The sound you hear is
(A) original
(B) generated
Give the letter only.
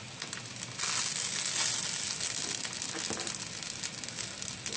A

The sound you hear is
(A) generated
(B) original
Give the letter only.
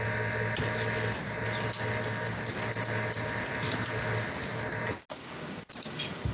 B